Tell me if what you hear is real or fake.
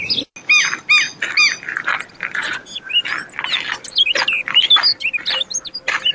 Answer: real